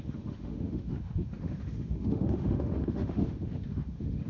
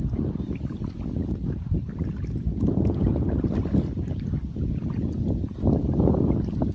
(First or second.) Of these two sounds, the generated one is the first